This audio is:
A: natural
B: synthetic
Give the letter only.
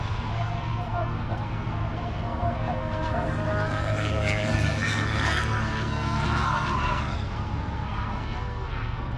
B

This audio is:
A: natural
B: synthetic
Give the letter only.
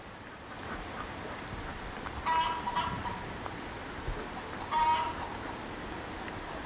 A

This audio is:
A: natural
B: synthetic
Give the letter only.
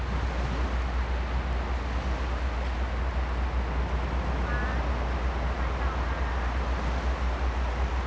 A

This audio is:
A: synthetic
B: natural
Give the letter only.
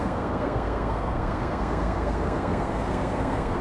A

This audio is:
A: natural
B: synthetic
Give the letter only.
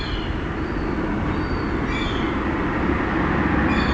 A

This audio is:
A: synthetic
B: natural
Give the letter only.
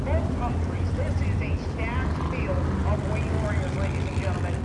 B